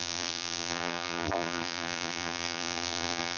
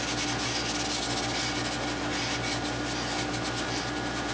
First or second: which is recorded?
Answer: second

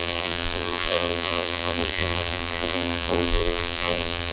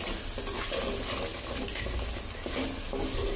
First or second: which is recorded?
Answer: second